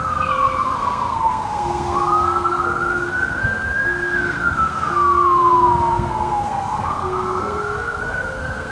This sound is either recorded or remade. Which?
remade